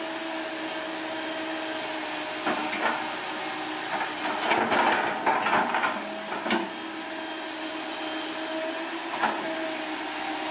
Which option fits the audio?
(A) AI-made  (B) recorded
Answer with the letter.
B